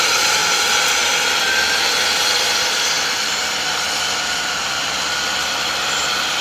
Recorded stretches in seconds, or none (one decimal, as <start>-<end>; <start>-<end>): 0.4-3.1